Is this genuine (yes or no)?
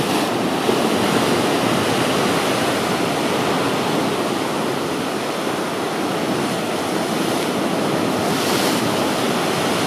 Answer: yes